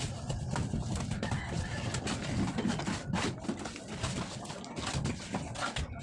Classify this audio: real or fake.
real